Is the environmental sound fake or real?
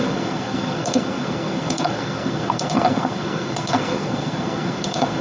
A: fake